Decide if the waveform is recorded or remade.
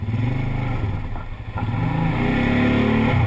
recorded